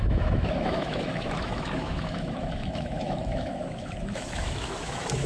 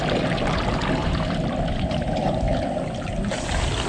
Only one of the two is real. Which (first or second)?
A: second